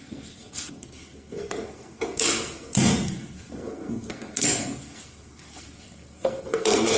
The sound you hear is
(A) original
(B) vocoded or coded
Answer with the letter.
B